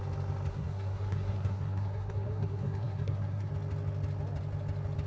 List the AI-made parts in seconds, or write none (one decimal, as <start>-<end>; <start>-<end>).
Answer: 0.5-3.5